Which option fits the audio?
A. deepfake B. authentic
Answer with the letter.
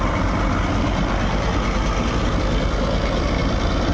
B